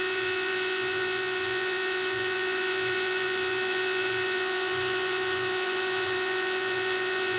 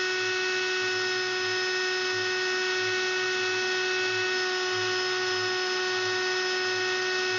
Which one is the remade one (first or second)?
first